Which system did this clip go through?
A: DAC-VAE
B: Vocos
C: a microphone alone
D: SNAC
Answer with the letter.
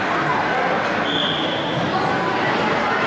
C